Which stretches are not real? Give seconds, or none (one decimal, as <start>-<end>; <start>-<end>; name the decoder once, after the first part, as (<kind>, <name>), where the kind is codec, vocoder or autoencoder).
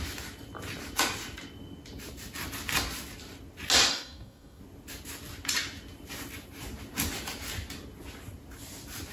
3.9-4.6 (codec, DAC)